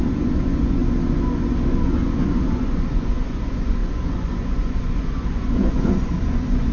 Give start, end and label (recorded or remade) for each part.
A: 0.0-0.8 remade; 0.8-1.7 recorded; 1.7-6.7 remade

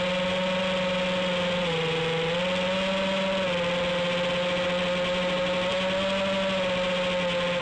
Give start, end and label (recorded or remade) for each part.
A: 0.0-7.6 recorded

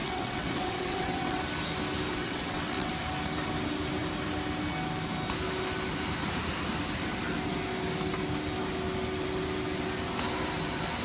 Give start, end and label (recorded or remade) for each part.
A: 0.0-1.4 remade; 1.4-2.1 recorded; 2.1-2.9 remade; 2.9-11.0 recorded

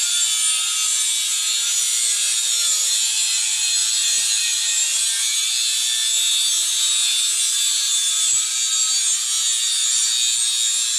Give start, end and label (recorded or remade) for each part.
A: 0.0-11.0 recorded

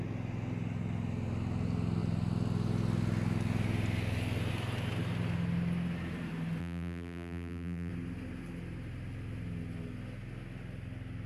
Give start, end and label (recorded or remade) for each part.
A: 0.0-6.6 recorded; 6.6-7.9 remade; 7.9-11.3 recorded

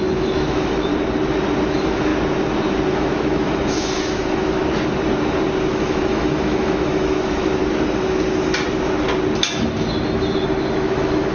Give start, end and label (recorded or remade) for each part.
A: 0.0-0.9 remade; 0.9-1.7 recorded; 1.7-2.1 remade; 2.1-2.9 recorded; 2.9-4.6 remade; 4.6-5.7 recorded; 5.7-7.5 remade; 7.5-10.7 recorded; 10.7-11.3 remade

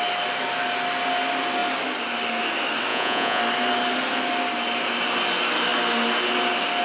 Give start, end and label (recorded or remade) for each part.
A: 0.0-2.9 recorded; 2.9-3.4 remade; 3.4-6.8 recorded

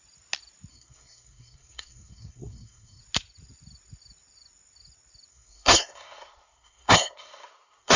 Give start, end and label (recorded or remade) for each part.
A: 0.0-0.7 recorded; 0.7-3.0 remade; 3.0-5.3 recorded; 5.3-8.0 remade